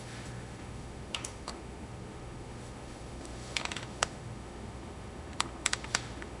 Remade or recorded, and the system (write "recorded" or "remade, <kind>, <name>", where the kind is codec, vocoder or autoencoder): remade, autoencoder, DAC-VAE